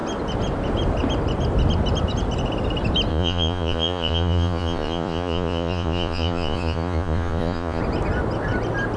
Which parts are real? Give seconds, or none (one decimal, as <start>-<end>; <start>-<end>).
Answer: 0.0-3.1; 7.8-9.0